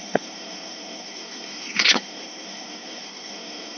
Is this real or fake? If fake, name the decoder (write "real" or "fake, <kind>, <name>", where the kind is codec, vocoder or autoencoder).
fake, codec, SNAC